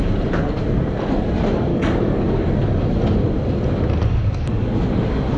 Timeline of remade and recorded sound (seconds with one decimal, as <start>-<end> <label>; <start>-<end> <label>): 0.0-1.7 recorded; 1.7-2.5 remade; 2.5-4.2 recorded; 4.2-5.4 remade

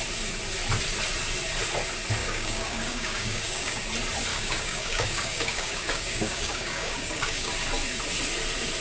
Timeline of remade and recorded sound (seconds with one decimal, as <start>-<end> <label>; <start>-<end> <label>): 0.0-2.2 recorded; 2.2-3.8 remade; 3.8-4.3 recorded; 4.3-7.5 remade; 7.5-8.8 recorded

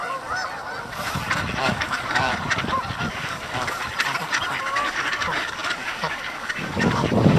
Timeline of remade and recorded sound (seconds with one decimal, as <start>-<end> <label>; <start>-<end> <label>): 0.0-1.6 recorded; 1.6-2.3 remade; 2.3-3.1 recorded; 3.1-3.8 remade; 3.8-4.6 recorded; 4.6-7.4 remade

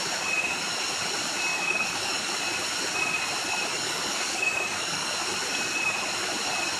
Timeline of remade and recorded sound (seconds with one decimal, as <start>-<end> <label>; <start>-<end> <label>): 0.0-1.5 recorded; 1.5-2.3 remade; 2.3-3.7 recorded; 3.7-5.1 remade; 5.1-6.8 recorded

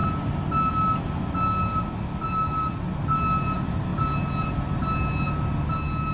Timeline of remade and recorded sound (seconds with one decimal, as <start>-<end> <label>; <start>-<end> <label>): 0.0-6.1 recorded

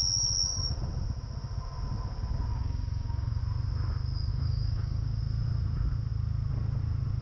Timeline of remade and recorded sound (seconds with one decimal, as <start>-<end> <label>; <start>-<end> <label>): 0.0-2.5 recorded; 2.5-3.4 remade; 3.4-4.3 recorded; 4.3-5.2 remade; 5.2-7.2 recorded